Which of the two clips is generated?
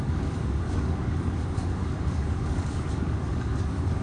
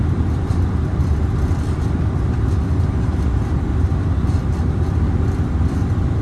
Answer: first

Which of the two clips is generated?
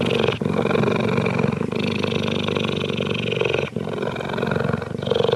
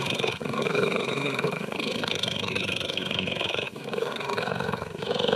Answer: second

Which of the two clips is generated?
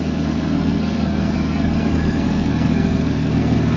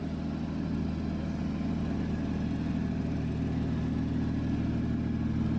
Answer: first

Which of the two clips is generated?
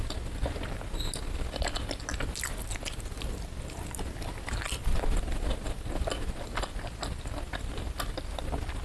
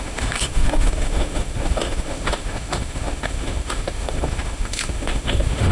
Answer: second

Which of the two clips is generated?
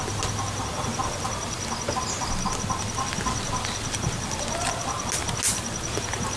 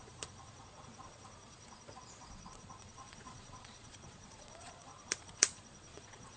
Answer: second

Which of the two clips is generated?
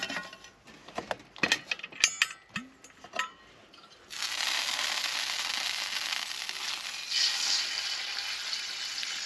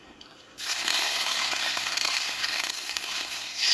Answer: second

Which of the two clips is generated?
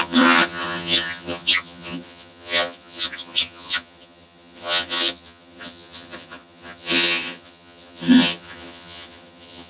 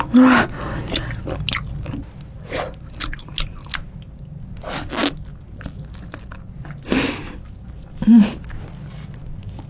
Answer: first